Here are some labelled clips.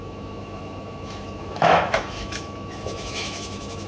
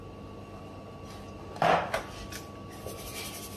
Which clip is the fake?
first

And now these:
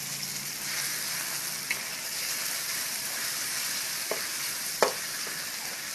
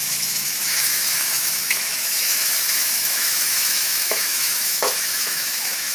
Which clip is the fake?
second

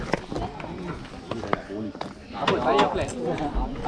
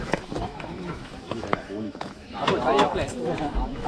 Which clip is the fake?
second